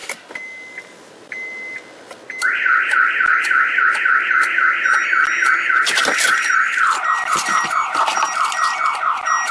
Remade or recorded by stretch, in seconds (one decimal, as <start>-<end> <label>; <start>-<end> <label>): 0.0-9.5 recorded